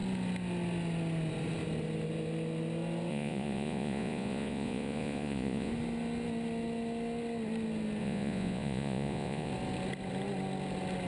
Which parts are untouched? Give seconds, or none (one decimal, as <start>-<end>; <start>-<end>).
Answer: 0.0-3.1; 5.7-8.0; 9.5-11.1